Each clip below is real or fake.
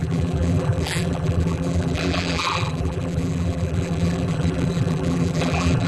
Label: fake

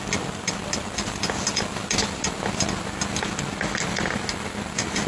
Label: real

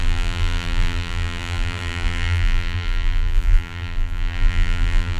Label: fake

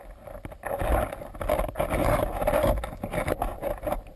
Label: real